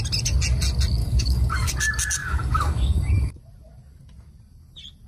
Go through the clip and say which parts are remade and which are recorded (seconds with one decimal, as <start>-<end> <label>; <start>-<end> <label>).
0.0-1.0 recorded; 1.0-1.7 remade; 1.7-2.2 recorded; 2.2-3.4 remade; 3.4-5.1 recorded